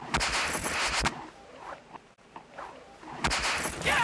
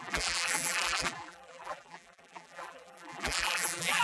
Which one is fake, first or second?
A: second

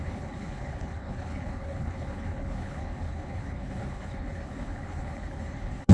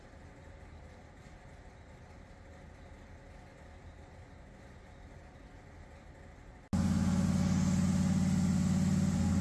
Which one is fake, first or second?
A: first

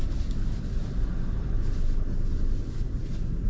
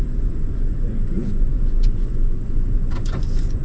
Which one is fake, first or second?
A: second